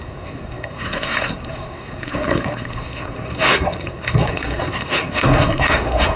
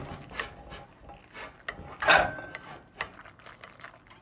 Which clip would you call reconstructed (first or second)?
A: first